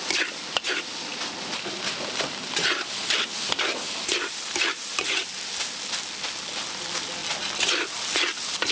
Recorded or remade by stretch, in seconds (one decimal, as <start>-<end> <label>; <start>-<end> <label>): 0.0-8.7 recorded